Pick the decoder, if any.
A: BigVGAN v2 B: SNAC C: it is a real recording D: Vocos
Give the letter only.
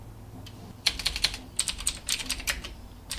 C